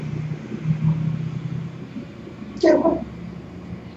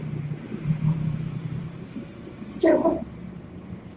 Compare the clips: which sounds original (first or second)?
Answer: first